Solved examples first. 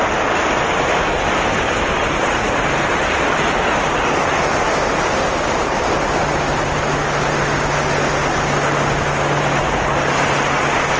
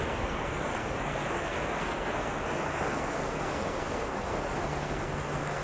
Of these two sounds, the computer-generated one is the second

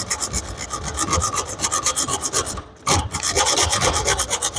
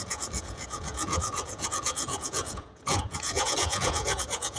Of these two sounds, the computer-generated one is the second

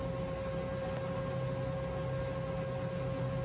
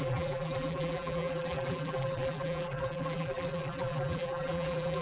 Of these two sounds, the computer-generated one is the second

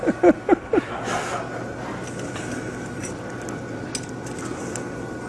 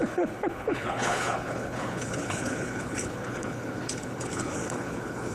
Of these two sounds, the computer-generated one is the second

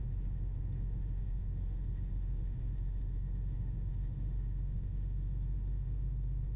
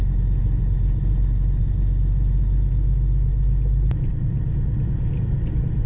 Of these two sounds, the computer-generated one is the first